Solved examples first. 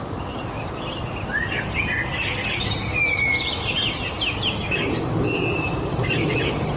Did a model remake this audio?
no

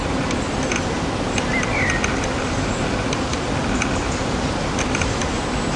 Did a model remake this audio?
no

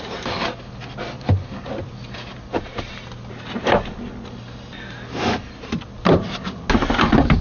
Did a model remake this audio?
no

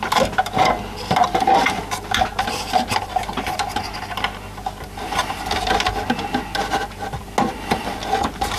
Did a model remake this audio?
no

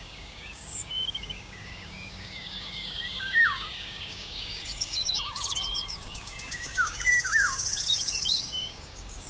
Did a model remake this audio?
yes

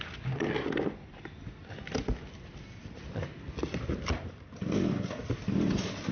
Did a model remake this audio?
no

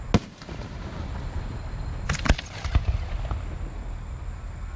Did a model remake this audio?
no